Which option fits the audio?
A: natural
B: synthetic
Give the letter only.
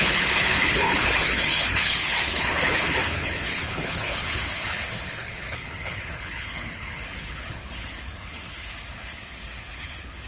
B